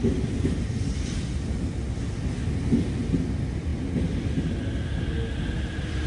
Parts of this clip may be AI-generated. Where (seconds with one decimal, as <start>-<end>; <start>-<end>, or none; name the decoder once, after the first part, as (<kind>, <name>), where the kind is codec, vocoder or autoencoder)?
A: none